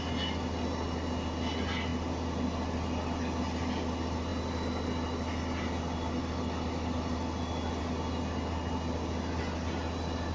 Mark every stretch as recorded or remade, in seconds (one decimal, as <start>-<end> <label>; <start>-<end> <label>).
0.0-10.3 recorded

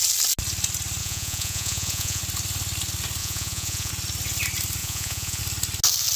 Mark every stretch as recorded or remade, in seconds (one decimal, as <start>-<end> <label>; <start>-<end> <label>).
0.0-1.0 recorded; 1.0-2.2 remade; 2.2-3.2 recorded; 3.2-3.9 remade; 3.9-4.8 recorded; 4.8-5.4 remade; 5.4-6.2 recorded

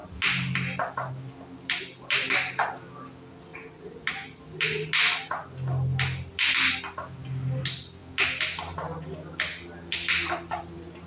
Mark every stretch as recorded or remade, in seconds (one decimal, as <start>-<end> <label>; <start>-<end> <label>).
0.0-11.1 recorded